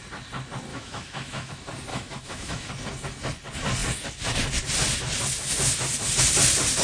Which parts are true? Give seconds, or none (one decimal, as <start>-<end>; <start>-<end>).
0.0-0.7; 1.5-1.9; 2.7-6.8